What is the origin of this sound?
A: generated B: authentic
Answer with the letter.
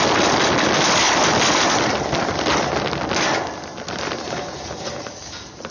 B